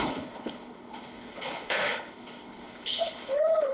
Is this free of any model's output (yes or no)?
no